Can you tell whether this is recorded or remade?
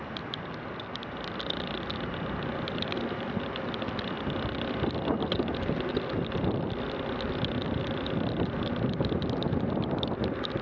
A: recorded